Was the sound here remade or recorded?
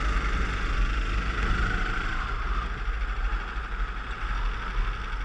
recorded